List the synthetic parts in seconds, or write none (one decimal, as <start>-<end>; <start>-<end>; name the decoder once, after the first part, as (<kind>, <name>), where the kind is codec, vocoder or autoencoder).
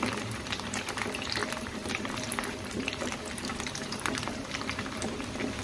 0.0-5.6 (vocoder, BigVGAN v2)